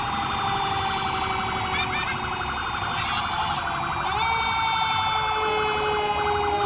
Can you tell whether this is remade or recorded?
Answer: recorded